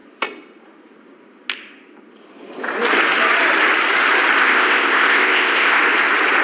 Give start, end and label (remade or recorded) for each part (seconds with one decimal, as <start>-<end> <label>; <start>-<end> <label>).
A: 0.0-4.4 recorded; 4.4-5.8 remade; 5.8-6.4 recorded